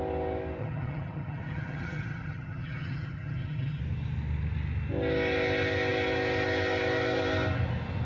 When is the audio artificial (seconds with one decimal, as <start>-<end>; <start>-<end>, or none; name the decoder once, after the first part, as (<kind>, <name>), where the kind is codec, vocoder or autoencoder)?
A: 0.6-3.8 (vocoder, HiFi-GAN)